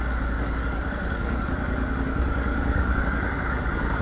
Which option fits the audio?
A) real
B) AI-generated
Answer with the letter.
B